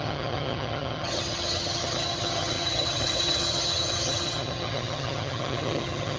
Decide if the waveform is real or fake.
fake